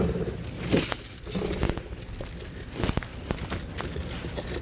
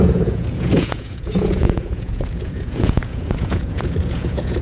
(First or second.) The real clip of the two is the first